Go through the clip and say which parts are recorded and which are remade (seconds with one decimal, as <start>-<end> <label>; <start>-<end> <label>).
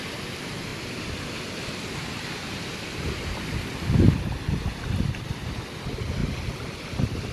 0.0-0.7 recorded; 0.7-2.6 remade; 2.6-6.2 recorded; 6.2-6.8 remade; 6.8-7.3 recorded